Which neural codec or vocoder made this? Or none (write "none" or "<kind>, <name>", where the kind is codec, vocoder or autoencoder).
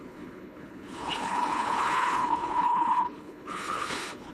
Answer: codec, HILCodec